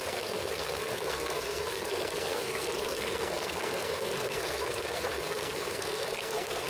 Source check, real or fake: fake